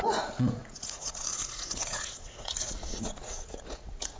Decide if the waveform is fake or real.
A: fake